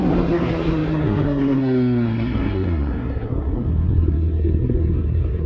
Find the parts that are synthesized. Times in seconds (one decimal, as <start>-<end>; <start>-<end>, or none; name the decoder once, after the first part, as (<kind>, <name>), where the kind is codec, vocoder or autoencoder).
0.0-5.5 (codec, SNAC)